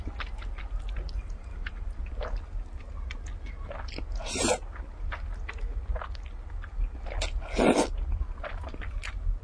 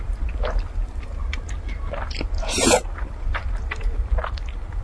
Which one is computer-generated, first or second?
second